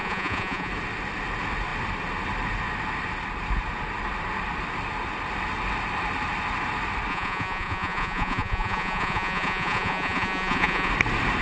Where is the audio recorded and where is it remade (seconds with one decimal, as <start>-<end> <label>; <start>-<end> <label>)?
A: 0.0-0.7 remade; 0.7-7.1 recorded; 7.1-10.9 remade; 10.9-11.4 recorded